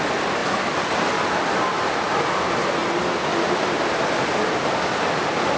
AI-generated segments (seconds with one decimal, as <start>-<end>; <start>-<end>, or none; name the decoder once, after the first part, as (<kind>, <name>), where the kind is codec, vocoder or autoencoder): none